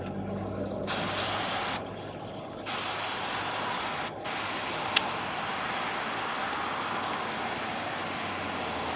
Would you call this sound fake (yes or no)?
no